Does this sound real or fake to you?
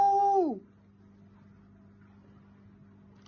real